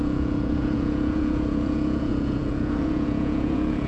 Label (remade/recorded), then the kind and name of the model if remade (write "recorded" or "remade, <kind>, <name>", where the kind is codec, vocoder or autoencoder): remade, vocoder, Vocos